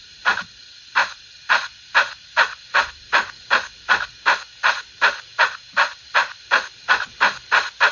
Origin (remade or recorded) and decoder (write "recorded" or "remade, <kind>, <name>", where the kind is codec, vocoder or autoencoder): recorded